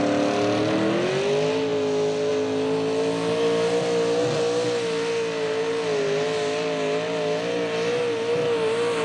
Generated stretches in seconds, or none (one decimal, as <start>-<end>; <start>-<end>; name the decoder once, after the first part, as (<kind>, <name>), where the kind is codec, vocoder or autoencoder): none